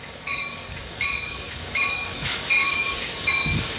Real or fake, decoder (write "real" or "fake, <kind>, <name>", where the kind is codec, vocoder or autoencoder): fake, codec, DAC